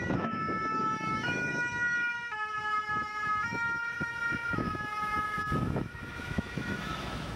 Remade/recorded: remade